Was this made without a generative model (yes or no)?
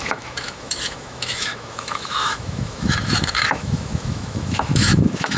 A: no